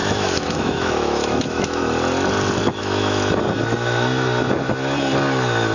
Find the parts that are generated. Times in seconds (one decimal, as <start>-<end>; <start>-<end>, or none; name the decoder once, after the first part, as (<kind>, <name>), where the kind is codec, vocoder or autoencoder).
0.0-1.8 (autoencoder, DAC-VAE); 2.8-3.4